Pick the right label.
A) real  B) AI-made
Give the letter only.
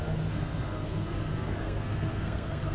B